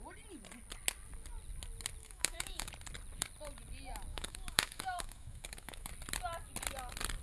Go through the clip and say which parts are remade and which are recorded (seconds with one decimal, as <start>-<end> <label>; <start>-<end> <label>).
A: 0.0-2.0 recorded; 2.0-2.7 remade; 2.7-4.1 recorded; 4.1-5.9 remade; 5.9-7.2 recorded